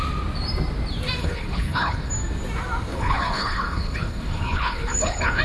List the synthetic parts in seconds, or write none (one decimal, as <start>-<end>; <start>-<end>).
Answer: 1.2-2.1; 2.9-5.4